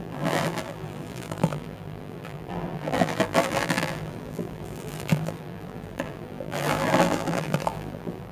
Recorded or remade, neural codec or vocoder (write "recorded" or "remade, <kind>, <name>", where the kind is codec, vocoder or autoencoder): remade, vocoder, BigVGAN v2